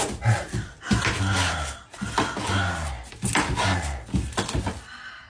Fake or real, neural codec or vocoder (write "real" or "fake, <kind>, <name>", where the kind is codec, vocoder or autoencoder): real